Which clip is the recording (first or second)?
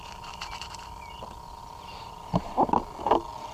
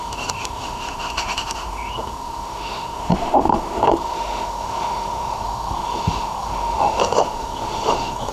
first